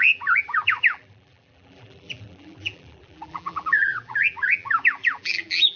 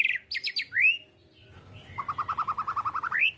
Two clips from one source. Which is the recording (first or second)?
second